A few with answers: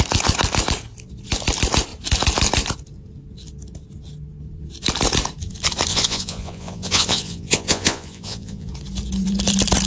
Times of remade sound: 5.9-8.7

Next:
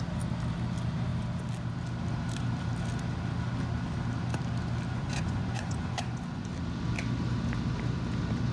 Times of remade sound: 4.9-6.5

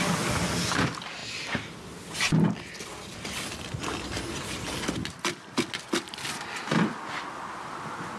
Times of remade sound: none

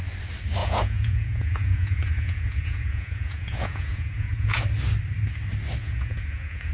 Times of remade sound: 0.6-4.6; 5.8-6.7

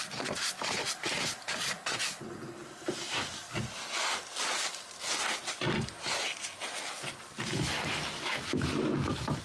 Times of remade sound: none

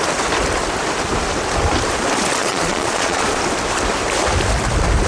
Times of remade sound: 2.4-3.2

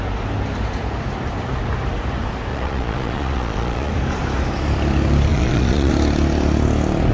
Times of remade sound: 2.5-3.9; 5.3-5.9